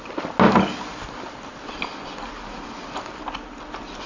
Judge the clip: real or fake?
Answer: real